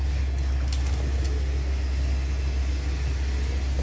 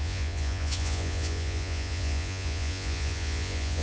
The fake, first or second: second